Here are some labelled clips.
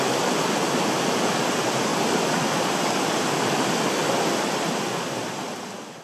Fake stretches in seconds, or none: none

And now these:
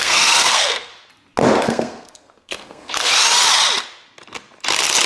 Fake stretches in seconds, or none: 0.0-0.9 (codec, SNAC); 1.6-3.1

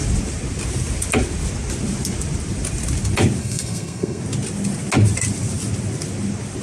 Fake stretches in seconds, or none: 3.4-4.2 (codec, SNAC)

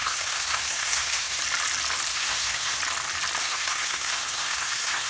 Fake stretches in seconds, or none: 0.0-1.4 (codec, SNAC); 2.1-2.8; 3.4-5.1

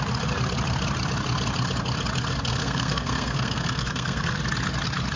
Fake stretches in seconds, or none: 2.5-4.4 (codec, SNAC)